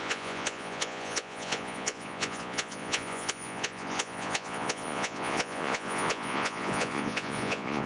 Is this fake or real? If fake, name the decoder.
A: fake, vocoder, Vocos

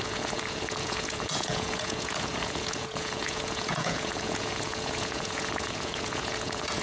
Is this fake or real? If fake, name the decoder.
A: fake, vocoder, Vocos